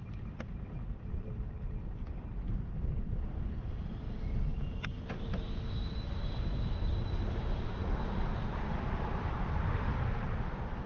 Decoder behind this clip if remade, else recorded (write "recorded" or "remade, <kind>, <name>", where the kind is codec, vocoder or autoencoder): remade, vocoder, BigVGAN v2